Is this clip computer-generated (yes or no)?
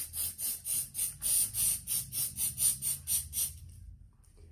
no